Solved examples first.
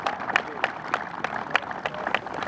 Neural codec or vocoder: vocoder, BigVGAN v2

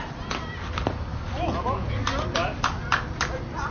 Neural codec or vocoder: none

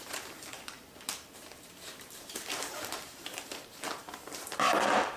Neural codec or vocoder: vocoder, BigVGAN v2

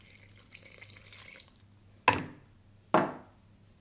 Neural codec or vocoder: none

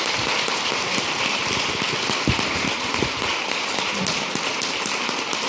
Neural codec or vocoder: none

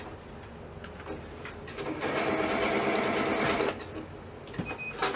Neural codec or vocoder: none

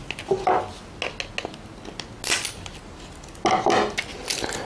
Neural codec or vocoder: none